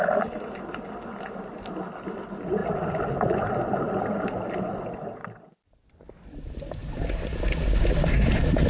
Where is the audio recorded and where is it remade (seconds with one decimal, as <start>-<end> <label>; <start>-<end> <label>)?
0.0-8.7 recorded